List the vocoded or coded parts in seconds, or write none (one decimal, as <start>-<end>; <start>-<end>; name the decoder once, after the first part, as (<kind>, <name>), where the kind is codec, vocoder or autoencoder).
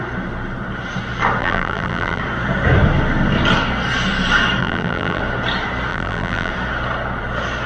1.4-2.2 (vocoder, BigVGAN v2); 4.6-5.2; 5.9-6.5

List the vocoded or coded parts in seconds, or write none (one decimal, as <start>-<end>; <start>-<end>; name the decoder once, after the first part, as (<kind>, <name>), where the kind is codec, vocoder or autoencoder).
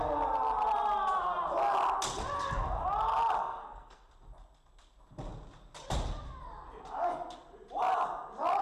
3.4-4.1 (codec, SNAC)